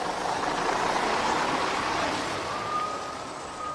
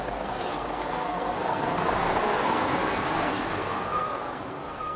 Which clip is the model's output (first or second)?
second